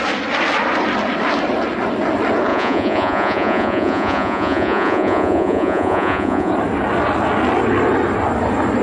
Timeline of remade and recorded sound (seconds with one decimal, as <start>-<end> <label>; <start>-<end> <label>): 0.0-2.5 recorded; 2.5-6.5 remade; 6.5-8.8 recorded